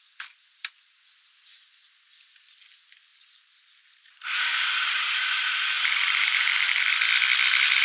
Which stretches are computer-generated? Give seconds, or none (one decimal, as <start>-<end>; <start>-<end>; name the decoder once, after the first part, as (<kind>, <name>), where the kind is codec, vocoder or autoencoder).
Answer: 3.1-6.9 (vocoder, BigVGAN v2)